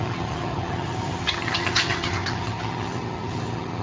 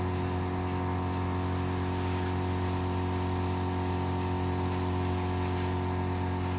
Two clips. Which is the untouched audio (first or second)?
second